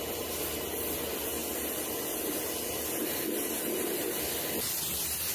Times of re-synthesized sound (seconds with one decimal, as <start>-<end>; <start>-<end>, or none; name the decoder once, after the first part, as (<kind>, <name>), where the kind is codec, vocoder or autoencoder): none